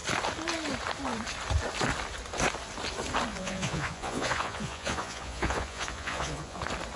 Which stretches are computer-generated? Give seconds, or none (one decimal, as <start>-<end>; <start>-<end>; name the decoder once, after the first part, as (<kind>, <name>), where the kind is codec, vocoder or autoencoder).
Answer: 3.3-6.6 (vocoder, Vocos)